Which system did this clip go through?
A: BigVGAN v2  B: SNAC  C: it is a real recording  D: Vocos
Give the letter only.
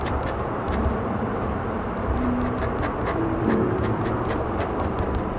A